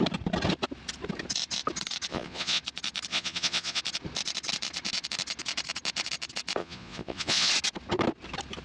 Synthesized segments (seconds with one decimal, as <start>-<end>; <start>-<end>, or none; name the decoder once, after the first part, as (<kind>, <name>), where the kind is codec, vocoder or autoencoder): 2.1-2.6 (vocoder, Vocos); 3.1-3.8; 6.6-7.5